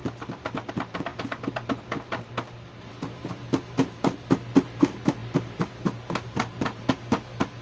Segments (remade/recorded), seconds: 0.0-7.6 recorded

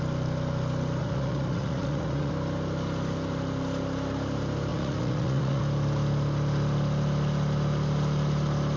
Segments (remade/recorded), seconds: 0.0-1.0 recorded; 1.0-2.3 remade; 2.3-4.7 recorded; 4.7-5.6 remade; 5.6-8.8 recorded